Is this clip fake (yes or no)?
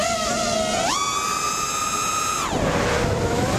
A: no